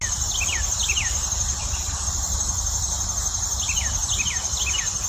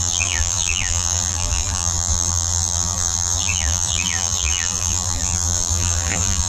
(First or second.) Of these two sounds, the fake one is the second